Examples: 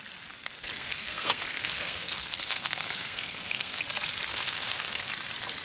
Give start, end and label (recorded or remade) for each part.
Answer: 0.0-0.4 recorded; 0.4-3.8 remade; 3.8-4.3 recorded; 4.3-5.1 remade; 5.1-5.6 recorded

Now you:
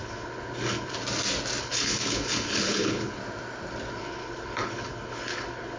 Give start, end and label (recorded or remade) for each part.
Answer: 0.0-1.0 remade; 1.0-1.6 recorded; 1.6-3.2 remade; 3.2-3.9 recorded; 3.9-5.8 remade

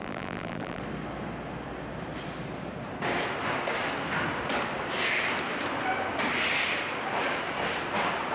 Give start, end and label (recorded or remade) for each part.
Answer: 0.0-0.8 remade; 0.8-8.3 recorded

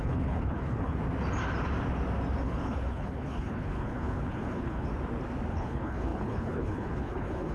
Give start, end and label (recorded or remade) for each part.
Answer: 0.0-1.0 remade; 1.0-2.4 recorded; 2.4-4.9 remade; 4.9-5.5 recorded; 5.5-7.5 remade

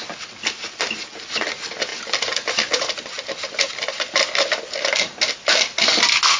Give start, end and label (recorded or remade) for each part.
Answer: 0.0-6.4 recorded

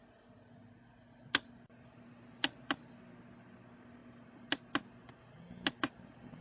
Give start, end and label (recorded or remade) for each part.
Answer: 0.0-6.4 recorded